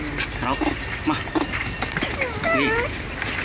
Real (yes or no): yes